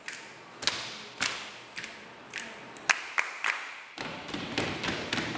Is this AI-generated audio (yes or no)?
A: no